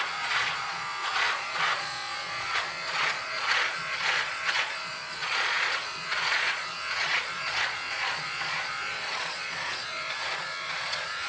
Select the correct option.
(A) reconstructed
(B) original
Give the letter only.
A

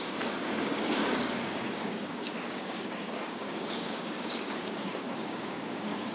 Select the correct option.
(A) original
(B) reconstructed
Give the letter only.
B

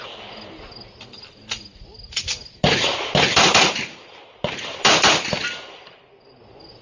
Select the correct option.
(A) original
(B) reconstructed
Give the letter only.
A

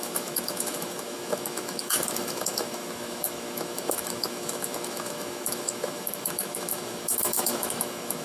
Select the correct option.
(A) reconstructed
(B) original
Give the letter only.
A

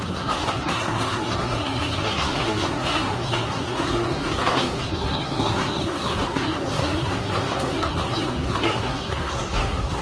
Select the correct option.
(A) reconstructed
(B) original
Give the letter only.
A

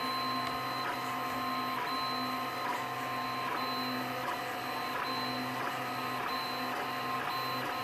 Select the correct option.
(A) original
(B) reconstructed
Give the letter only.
A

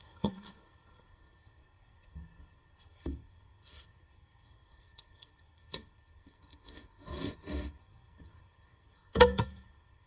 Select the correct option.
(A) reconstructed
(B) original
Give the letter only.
A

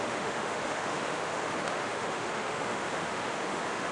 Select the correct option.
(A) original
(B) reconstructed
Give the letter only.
B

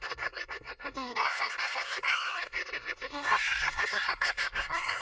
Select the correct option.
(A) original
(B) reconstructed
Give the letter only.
B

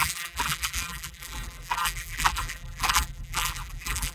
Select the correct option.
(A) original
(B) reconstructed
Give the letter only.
B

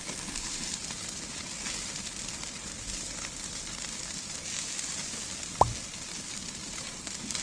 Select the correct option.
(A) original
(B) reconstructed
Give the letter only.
A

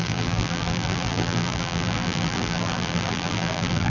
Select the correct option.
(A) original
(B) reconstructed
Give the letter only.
B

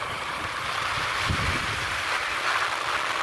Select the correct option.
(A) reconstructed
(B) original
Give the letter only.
B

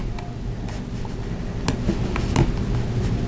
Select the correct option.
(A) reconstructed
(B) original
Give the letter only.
B